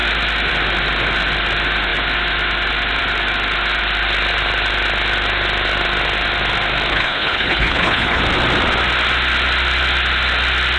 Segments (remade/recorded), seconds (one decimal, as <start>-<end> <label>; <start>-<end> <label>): 0.0-6.9 recorded; 6.9-8.2 remade; 8.2-10.8 recorded